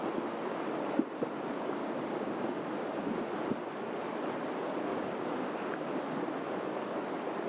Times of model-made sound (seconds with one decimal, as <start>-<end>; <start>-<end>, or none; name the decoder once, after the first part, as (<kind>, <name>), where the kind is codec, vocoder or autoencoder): 1.8-2.9 (codec, DAC); 4.9-6.3